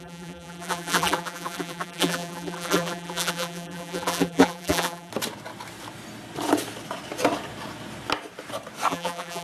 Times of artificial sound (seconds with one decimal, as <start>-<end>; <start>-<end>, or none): 0.0-5.1; 8.9-9.4